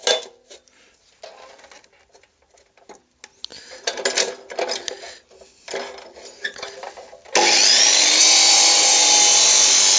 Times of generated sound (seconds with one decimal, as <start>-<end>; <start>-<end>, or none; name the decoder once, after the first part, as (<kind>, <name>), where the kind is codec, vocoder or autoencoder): none